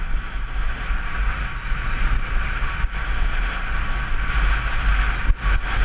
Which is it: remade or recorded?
recorded